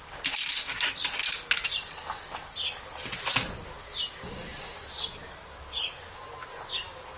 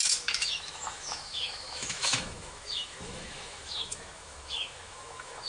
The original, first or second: first